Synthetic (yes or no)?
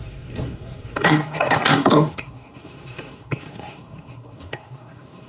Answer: yes